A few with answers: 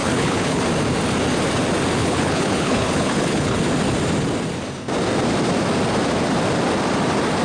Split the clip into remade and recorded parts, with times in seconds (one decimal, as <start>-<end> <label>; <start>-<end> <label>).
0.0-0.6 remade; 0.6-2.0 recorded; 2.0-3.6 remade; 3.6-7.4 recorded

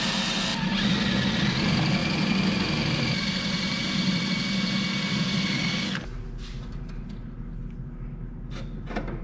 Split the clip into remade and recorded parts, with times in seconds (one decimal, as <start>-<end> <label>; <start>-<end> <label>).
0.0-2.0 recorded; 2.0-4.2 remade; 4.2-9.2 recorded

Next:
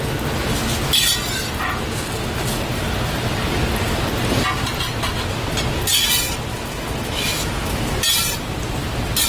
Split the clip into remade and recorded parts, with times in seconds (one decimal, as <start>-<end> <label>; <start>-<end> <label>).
0.0-6.5 recorded; 6.5-8.0 remade; 8.0-9.3 recorded

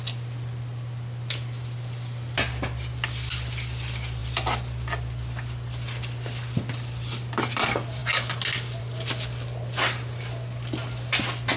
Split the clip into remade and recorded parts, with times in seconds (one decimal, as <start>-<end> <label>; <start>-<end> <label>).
0.0-11.6 recorded

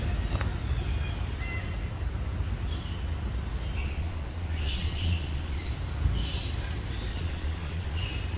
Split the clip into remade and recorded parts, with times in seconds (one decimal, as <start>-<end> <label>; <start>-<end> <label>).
0.0-3.8 recorded; 3.8-5.7 remade; 5.7-7.1 recorded; 7.1-8.0 remade; 8.0-8.4 recorded

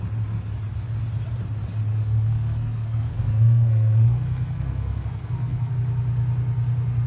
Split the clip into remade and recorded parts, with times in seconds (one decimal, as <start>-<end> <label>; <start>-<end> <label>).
0.0-1.9 recorded; 1.9-5.7 remade; 5.7-7.1 recorded